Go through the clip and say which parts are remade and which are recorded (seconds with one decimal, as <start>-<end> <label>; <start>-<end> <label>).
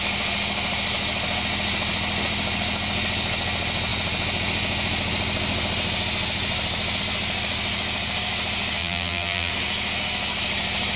0.0-8.8 recorded; 8.8-9.5 remade; 9.5-11.0 recorded